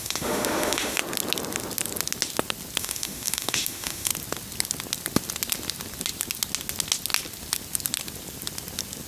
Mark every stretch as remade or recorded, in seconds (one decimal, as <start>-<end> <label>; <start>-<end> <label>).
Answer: 0.0-1.0 remade; 1.0-2.8 recorded; 2.8-4.1 remade; 4.1-9.1 recorded

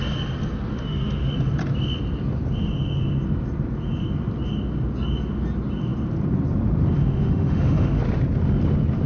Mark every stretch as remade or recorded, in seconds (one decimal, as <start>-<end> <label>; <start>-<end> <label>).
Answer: 0.0-0.7 recorded; 0.7-1.3 remade; 1.3-7.0 recorded; 7.0-8.0 remade; 8.0-9.1 recorded

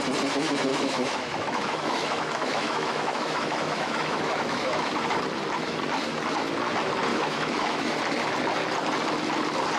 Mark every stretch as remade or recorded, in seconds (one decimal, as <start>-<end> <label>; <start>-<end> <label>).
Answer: 0.0-0.7 recorded; 0.7-4.9 remade; 4.9-7.1 recorded; 7.1-8.0 remade; 8.0-9.8 recorded

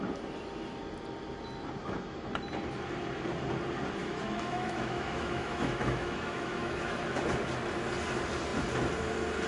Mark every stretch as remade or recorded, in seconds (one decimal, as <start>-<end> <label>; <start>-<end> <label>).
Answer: 0.0-1.8 recorded; 1.8-2.3 remade; 2.3-4.0 recorded; 4.0-7.2 remade; 7.2-9.5 recorded

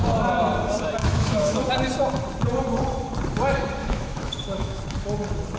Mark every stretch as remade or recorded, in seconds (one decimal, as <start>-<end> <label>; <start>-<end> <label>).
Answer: 0.0-1.0 recorded; 1.0-1.7 remade; 1.7-3.8 recorded; 3.8-4.8 remade; 4.8-5.6 recorded

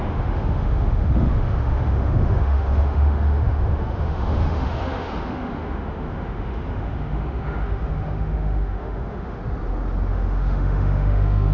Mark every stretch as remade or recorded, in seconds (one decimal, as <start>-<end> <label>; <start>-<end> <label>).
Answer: 0.0-9.4 remade; 9.4-10.1 recorded; 10.1-11.5 remade

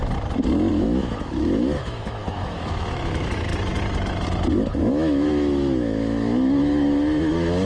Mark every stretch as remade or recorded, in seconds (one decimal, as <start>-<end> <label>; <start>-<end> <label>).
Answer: 0.0-0.7 recorded; 0.7-3.5 remade; 3.5-4.5 recorded; 4.5-7.7 remade

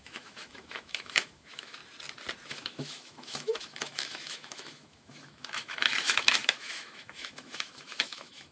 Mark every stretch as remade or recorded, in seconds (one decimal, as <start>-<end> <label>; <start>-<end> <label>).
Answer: 0.0-1.8 remade; 1.8-2.5 recorded; 2.5-8.5 remade